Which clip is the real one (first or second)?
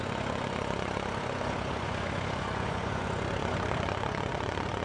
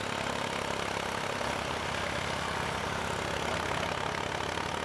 second